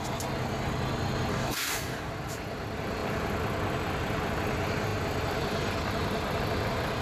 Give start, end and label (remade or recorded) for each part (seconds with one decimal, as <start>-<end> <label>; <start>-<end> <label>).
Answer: 0.0-1.3 recorded; 1.3-2.1 remade; 2.1-7.0 recorded